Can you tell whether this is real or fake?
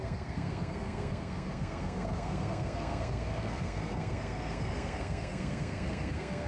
fake